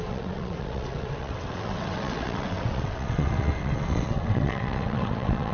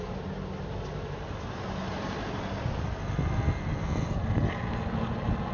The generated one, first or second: first